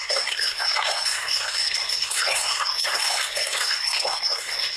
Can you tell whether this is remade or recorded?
remade